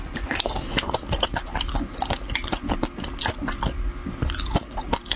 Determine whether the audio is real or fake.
real